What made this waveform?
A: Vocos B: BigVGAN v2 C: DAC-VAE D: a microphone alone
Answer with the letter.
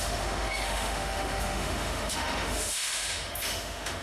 C